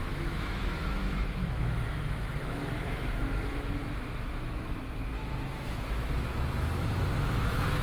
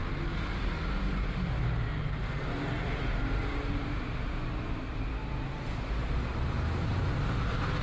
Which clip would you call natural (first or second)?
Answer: second